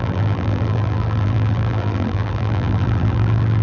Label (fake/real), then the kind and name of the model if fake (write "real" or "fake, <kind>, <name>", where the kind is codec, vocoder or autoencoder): fake, vocoder, BigVGAN v2